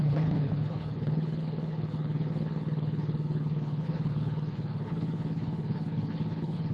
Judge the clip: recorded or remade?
remade